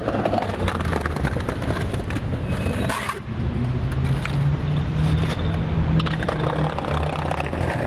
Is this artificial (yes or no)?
no